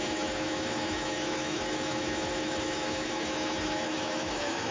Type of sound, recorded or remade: remade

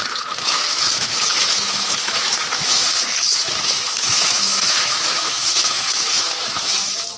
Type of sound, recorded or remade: remade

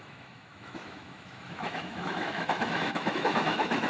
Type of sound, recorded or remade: remade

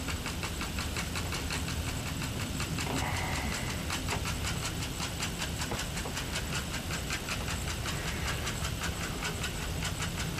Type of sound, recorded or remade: recorded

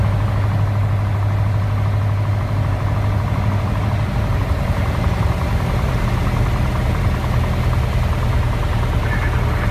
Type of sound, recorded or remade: recorded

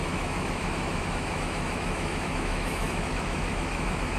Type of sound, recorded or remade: remade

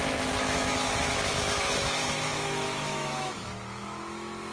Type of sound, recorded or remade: remade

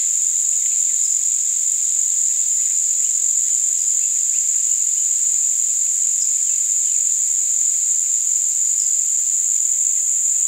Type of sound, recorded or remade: recorded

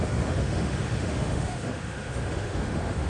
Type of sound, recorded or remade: remade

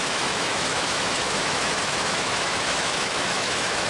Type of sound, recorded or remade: remade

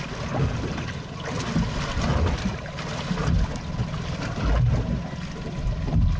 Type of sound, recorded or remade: recorded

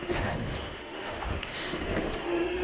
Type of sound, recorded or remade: remade